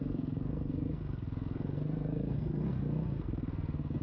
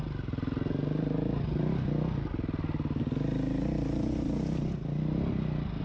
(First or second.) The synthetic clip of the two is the first